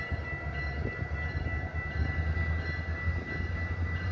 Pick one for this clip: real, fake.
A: real